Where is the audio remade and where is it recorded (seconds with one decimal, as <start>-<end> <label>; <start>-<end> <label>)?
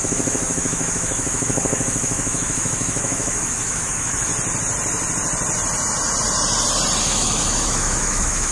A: 0.0-4.3 remade; 4.3-7.0 recorded; 7.0-8.5 remade